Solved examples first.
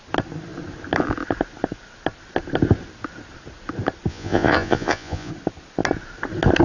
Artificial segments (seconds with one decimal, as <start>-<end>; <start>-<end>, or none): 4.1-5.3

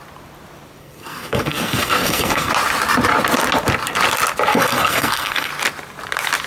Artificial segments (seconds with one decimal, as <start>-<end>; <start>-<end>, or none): 0.8-2.5; 4.5-5.5

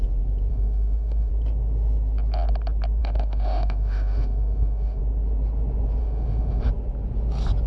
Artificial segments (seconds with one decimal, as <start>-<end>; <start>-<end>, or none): 0.5-1.3; 3.0-5.0; 6.0-6.6